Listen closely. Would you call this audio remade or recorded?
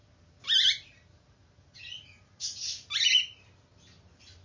recorded